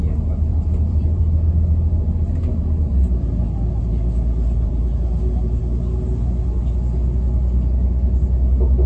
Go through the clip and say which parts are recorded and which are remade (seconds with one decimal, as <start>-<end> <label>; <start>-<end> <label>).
0.0-0.5 recorded; 0.5-1.5 remade; 1.5-8.9 recorded